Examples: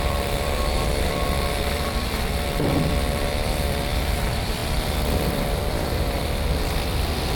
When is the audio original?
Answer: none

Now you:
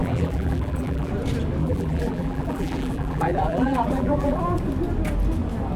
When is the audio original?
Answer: 1.1-1.6; 4.4-5.8